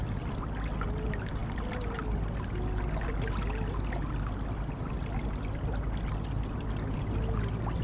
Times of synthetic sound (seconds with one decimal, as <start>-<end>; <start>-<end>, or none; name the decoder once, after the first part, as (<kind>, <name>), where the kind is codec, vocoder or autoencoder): none